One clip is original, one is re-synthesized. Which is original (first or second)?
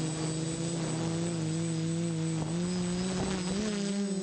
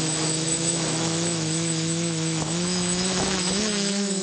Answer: first